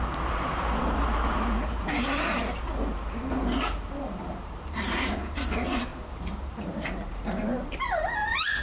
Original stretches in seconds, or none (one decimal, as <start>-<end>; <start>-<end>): none